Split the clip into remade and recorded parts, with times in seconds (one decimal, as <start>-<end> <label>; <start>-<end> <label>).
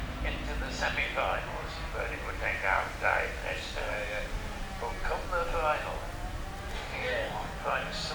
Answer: 0.0-6.7 recorded; 6.7-7.5 remade; 7.5-8.1 recorded